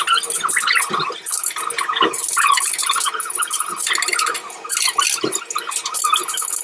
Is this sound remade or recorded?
recorded